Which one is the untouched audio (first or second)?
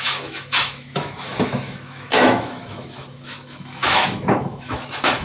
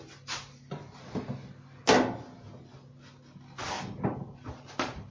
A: second